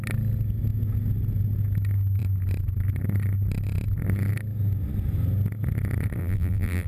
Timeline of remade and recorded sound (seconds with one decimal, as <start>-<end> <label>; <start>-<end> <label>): 0.0-6.2 recorded; 6.2-6.9 remade